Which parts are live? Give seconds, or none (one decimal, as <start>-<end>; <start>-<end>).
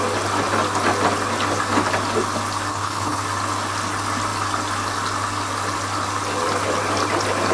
0.0-2.7; 3.2-7.5